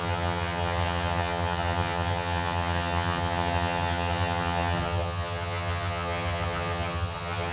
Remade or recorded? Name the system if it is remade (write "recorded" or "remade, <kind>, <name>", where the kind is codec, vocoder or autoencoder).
remade, vocoder, HiFi-GAN